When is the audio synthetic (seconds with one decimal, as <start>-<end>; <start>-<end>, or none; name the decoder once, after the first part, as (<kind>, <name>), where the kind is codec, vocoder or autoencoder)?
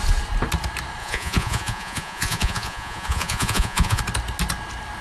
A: 1.0-4.0 (vocoder, Vocos)